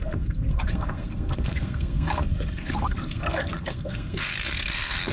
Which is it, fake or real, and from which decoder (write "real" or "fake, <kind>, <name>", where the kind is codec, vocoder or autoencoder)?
fake, codec, SNAC